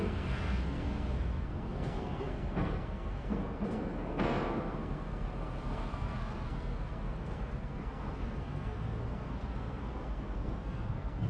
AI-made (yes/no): yes